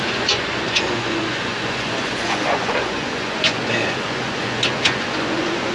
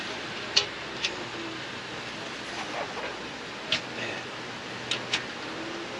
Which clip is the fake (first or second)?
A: first